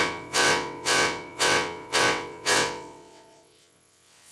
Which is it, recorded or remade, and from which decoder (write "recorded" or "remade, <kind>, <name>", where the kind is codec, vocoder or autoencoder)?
remade, vocoder, WaveNeXt